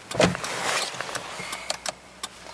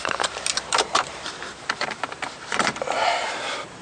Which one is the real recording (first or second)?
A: first